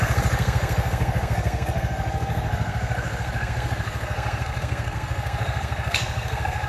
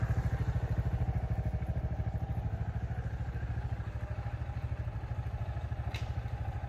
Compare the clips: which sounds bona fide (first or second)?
second